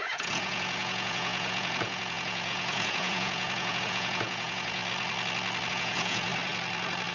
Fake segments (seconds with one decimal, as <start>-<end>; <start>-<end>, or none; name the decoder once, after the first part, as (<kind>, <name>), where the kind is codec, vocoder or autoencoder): 0.0-4.8 (vocoder, Vocos); 5.7-6.3